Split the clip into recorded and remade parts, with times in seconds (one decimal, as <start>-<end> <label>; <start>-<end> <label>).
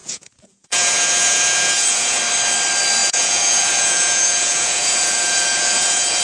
0.0-2.2 remade; 2.2-3.0 recorded; 3.0-6.2 remade